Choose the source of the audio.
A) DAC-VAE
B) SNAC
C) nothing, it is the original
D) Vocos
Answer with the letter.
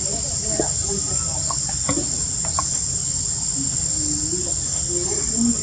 C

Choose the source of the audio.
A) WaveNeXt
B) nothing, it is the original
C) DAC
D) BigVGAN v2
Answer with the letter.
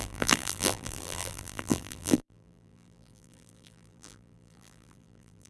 D